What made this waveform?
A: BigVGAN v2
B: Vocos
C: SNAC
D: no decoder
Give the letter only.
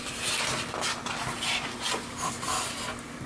D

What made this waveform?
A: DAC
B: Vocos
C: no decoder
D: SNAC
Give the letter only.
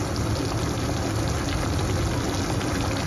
C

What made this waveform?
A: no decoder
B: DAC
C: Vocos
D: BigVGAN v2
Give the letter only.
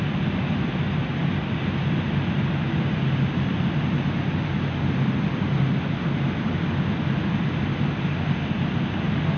A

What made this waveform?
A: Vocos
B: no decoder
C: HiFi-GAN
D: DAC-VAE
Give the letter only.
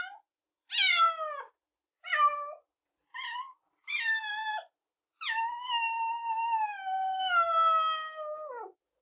B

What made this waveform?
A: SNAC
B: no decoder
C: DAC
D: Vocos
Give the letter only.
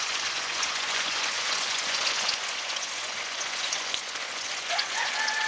D